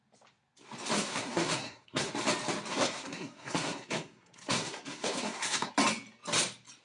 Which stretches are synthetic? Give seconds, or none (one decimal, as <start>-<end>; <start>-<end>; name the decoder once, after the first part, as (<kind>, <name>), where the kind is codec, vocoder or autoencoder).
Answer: 0.9-2.1 (codec, SNAC); 2.7-5.7